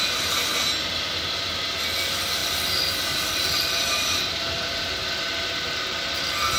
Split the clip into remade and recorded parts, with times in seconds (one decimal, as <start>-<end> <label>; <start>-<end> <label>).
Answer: 0.0-2.4 recorded; 2.4-4.9 remade; 4.9-6.6 recorded

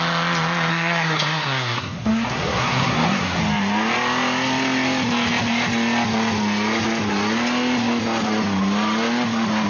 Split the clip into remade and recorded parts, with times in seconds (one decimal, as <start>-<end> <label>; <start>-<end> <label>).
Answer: 0.0-0.7 recorded; 0.7-3.4 remade; 3.4-9.7 recorded

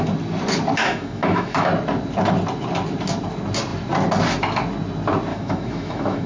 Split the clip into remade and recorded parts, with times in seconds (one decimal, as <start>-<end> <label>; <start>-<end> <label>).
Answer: 0.0-0.8 recorded; 0.8-1.7 remade; 1.7-5.3 recorded; 5.3-6.3 remade